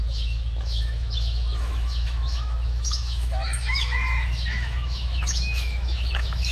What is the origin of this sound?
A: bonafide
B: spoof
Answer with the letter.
B